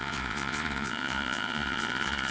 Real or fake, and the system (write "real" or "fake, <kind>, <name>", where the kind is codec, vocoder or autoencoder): fake, vocoder, Vocos